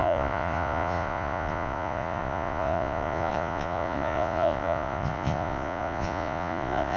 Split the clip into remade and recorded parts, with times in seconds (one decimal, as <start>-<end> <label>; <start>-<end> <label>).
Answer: 0.0-7.0 remade

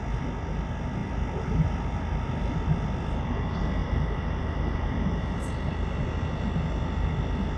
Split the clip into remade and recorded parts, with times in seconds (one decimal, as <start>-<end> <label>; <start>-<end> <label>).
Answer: 0.0-1.0 recorded; 1.0-2.0 remade; 2.0-3.8 recorded; 3.8-6.0 remade; 6.0-7.6 recorded